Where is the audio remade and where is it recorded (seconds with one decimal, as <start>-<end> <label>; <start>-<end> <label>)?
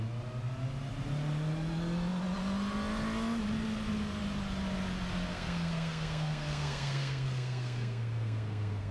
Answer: 0.0-5.3 recorded; 5.3-8.9 remade